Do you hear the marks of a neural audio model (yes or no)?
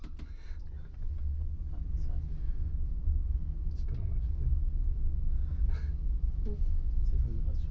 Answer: no